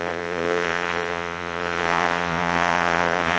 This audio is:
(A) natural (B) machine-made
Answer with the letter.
B